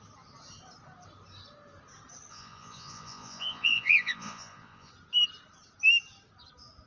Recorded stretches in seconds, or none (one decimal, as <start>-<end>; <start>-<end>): 0.0-2.3; 4.9-6.9